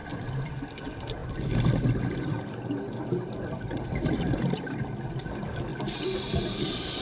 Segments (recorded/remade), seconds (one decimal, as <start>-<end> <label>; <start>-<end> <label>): 0.0-0.5 remade; 0.5-7.0 recorded